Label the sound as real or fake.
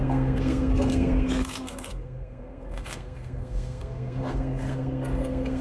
fake